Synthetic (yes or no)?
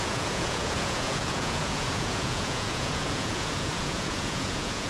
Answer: yes